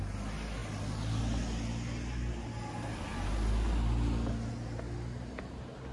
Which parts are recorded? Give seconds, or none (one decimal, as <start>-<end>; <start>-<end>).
0.0-5.9